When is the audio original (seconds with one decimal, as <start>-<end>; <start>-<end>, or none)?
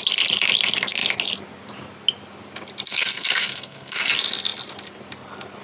0.0-2.9; 4.1-5.6